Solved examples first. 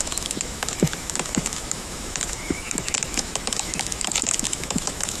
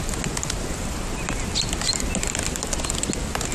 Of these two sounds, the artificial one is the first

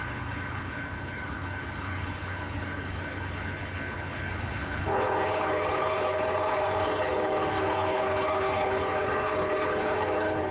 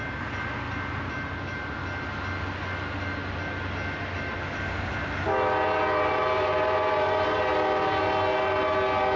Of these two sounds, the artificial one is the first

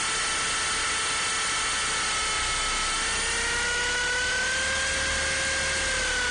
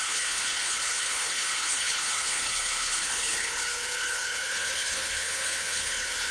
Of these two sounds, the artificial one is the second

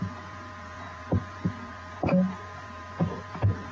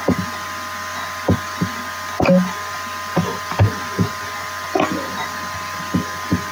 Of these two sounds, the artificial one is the first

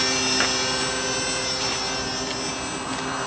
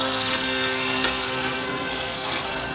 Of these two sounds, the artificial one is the second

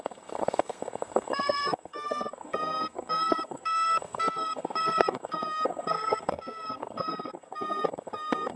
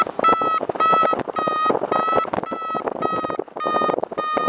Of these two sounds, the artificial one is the first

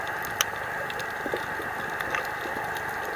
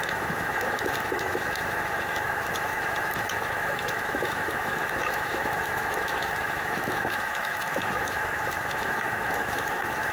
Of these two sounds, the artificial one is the second